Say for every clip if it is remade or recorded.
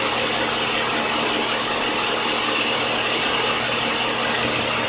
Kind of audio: recorded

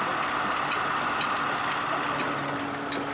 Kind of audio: recorded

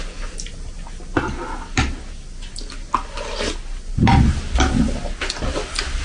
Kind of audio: recorded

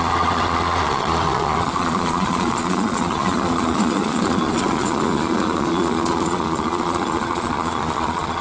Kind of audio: remade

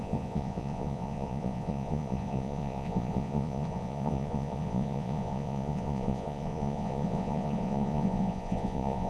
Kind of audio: remade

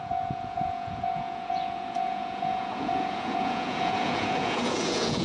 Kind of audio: remade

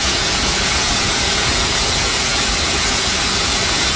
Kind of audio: remade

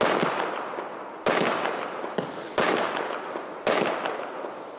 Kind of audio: recorded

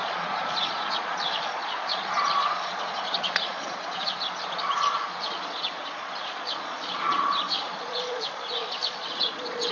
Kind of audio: remade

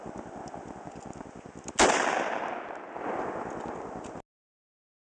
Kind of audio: recorded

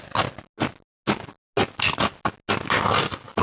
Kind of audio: recorded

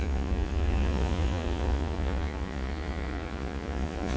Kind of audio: remade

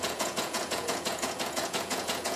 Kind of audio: remade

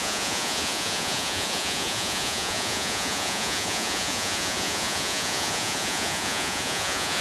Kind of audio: remade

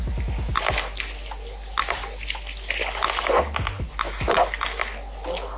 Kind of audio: recorded